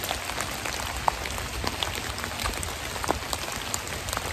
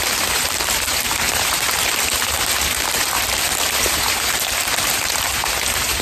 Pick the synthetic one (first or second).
second